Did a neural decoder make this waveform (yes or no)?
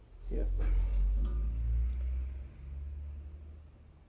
no